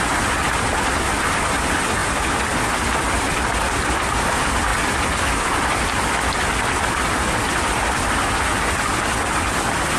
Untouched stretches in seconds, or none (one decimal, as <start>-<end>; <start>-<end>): 0.0-10.0